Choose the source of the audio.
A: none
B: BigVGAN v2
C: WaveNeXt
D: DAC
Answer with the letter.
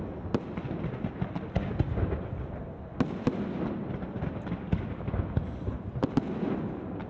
A